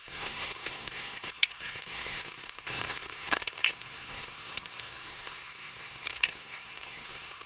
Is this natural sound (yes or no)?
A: no